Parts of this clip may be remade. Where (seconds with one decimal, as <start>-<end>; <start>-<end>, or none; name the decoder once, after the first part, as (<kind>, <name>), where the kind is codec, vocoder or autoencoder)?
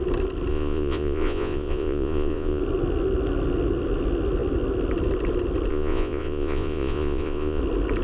0.5-2.6 (vocoder, Vocos); 5.7-7.6